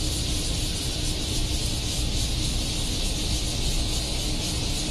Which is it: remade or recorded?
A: recorded